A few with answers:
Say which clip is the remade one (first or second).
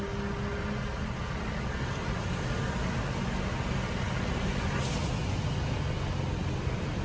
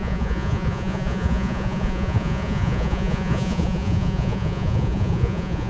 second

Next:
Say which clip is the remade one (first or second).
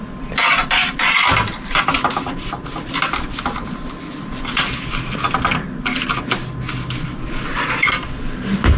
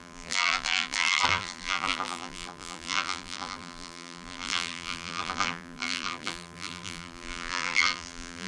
second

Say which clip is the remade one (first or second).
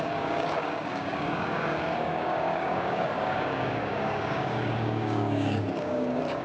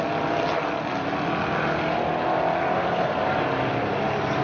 first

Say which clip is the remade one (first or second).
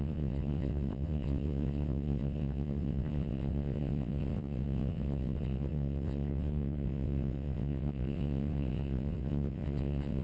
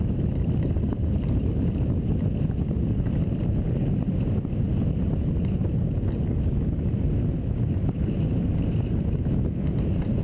first